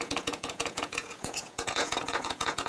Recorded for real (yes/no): no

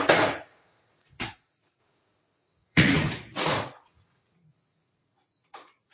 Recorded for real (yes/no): no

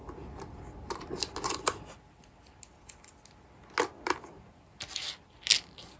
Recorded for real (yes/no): yes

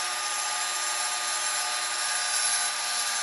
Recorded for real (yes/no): yes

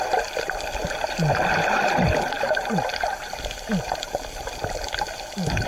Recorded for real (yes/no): yes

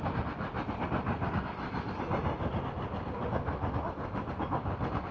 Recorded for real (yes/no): yes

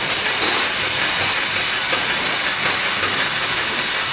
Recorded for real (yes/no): yes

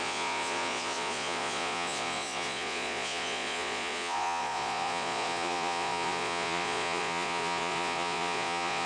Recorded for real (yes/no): no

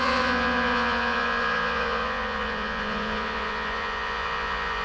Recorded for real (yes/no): no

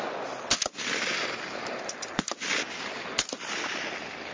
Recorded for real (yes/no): yes